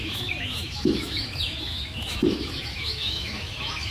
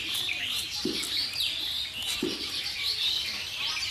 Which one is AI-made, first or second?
first